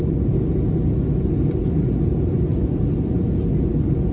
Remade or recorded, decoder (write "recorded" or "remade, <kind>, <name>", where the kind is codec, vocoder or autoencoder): recorded